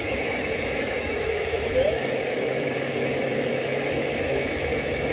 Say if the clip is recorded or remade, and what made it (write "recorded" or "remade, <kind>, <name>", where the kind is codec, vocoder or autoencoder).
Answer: remade, autoencoder, DAC-VAE